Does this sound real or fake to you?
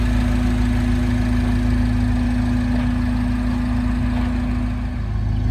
real